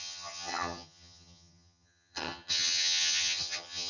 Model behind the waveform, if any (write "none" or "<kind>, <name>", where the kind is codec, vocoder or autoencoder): vocoder, HiFi-GAN